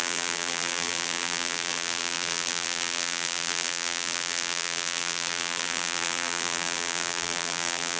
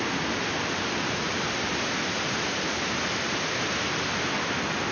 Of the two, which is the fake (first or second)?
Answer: first